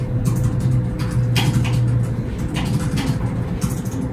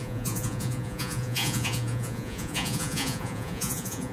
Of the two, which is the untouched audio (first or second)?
first